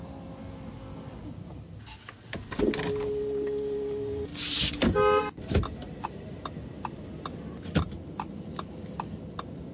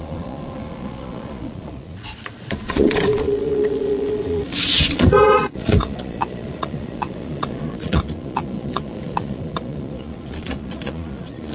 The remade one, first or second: second